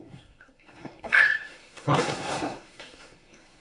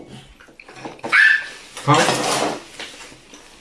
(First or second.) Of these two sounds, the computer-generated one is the first